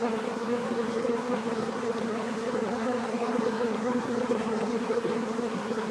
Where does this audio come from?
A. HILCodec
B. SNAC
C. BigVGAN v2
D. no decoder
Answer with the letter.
B